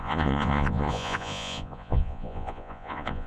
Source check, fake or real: fake